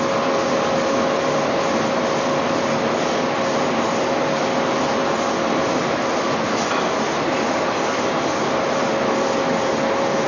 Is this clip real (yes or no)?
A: yes